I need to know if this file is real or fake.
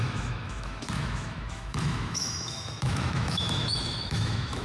fake